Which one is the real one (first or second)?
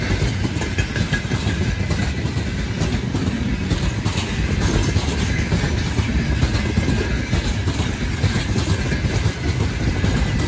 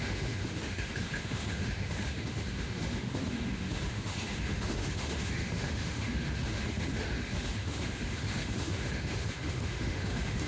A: first